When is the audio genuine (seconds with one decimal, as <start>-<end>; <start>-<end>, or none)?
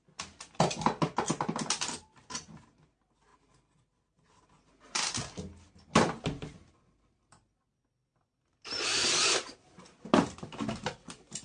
0.0-11.4